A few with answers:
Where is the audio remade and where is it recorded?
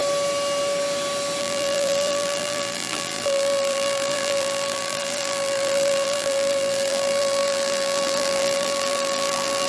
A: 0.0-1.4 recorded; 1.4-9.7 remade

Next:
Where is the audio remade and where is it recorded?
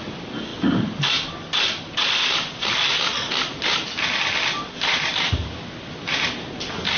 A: 0.0-7.0 recorded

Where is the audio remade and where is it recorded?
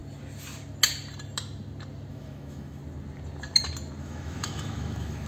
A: 0.0-2.1 recorded; 2.1-2.8 remade; 2.8-4.0 recorded; 4.0-5.3 remade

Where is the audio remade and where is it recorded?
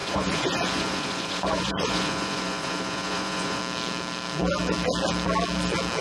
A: 0.0-3.6 remade; 3.6-6.0 recorded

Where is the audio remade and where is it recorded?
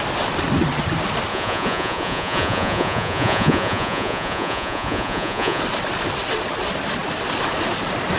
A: 0.0-1.3 recorded; 1.3-5.6 remade; 5.6-8.2 recorded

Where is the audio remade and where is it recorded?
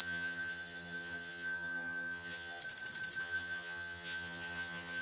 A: 0.0-2.6 remade; 2.6-3.2 recorded; 3.2-5.0 remade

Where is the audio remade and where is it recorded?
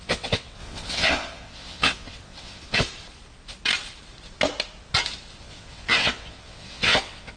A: 0.0-2.9 remade; 2.9-5.4 recorded; 5.4-7.4 remade